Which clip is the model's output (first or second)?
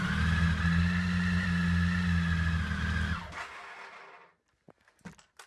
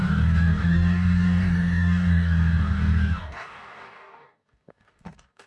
second